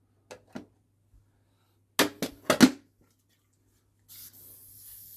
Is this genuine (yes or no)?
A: yes